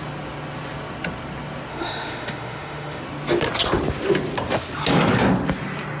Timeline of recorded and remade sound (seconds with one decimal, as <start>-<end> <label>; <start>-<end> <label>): 0.0-1.7 recorded; 1.7-3.0 remade; 3.0-6.0 recorded